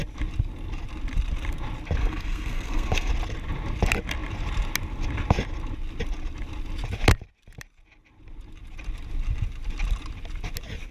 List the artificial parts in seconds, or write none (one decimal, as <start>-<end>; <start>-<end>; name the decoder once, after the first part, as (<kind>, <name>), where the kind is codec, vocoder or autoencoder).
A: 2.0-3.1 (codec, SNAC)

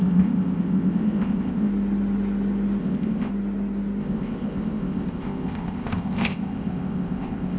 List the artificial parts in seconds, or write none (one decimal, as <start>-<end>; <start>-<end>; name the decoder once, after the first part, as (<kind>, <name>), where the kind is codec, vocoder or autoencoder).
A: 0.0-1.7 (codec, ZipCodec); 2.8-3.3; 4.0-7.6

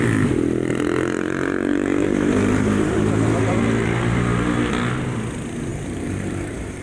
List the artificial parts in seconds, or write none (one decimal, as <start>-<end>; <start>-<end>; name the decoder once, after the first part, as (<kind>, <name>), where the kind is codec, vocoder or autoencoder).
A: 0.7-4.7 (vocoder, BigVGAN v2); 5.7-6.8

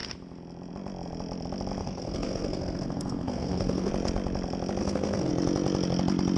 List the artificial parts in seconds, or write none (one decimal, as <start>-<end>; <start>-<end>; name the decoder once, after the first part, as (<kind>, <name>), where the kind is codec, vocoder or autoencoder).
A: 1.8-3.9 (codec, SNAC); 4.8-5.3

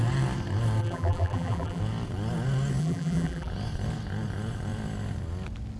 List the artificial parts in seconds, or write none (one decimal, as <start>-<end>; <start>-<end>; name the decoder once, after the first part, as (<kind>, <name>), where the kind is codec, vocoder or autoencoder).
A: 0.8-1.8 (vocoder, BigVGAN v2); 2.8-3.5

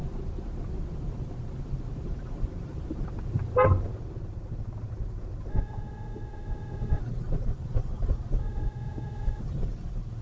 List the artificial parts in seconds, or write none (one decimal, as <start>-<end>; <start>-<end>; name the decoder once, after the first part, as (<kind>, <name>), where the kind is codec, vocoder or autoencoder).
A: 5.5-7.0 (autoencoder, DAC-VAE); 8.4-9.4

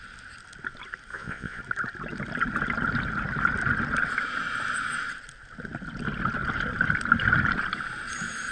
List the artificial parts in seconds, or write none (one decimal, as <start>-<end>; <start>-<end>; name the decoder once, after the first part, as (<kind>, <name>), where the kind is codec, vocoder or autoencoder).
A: 1.1-1.6 (vocoder, Vocos)